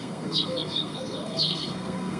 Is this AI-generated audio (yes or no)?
yes